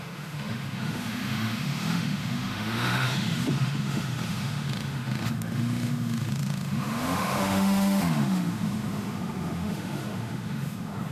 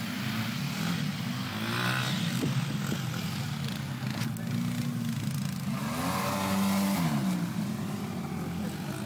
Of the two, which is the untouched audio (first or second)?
second